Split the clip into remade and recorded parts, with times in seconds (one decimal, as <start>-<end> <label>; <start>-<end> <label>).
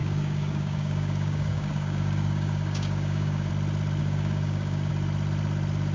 0.0-3.5 remade; 3.5-4.0 recorded; 4.0-4.9 remade; 4.9-5.9 recorded